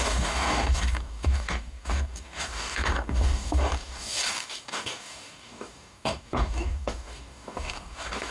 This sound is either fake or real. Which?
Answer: fake